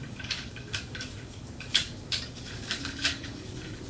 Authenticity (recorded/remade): remade